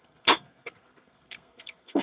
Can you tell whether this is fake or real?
fake